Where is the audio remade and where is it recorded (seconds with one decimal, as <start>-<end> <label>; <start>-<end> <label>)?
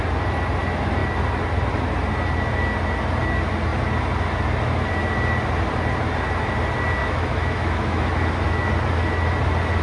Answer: 0.0-7.0 recorded; 7.0-8.7 remade; 8.7-9.8 recorded